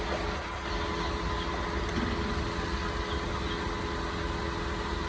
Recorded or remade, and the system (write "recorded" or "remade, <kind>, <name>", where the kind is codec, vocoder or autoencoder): recorded